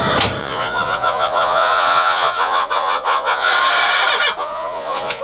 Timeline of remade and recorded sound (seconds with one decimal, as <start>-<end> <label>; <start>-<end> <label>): 0.0-0.4 recorded; 0.4-3.5 remade; 3.5-4.4 recorded; 4.4-5.2 remade